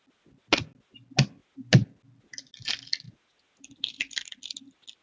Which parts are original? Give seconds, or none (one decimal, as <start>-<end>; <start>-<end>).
0.0-5.0